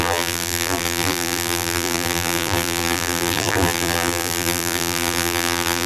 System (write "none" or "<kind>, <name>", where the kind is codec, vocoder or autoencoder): vocoder, BigVGAN v2